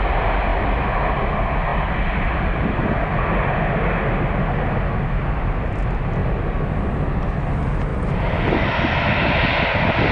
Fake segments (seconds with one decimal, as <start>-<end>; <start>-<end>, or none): none